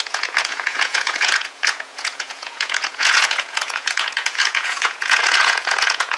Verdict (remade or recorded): remade